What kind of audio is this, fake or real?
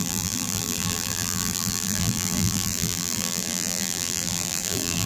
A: fake